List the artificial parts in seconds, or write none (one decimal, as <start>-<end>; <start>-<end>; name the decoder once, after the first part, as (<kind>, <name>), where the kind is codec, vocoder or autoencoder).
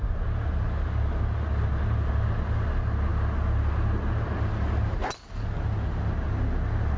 none